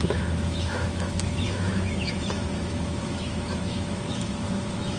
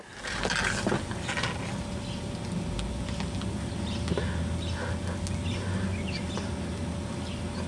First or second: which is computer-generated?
first